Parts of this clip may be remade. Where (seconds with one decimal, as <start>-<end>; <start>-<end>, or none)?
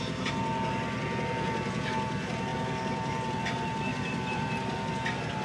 2.5-3.4; 3.9-4.9